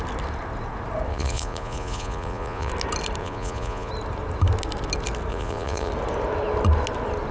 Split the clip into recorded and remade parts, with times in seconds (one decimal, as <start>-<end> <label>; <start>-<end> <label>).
0.0-1.1 recorded; 1.1-2.7 remade; 2.7-3.2 recorded; 3.2-3.9 remade; 3.9-5.3 recorded; 5.3-5.9 remade; 5.9-7.3 recorded